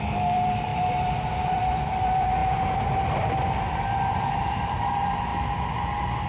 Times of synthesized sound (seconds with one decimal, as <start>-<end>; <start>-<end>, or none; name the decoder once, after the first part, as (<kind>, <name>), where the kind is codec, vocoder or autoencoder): 0.0-5.3 (vocoder, BigVGAN v2)